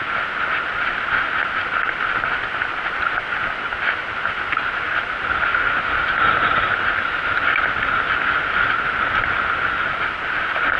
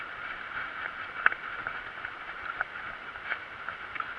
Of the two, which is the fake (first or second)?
second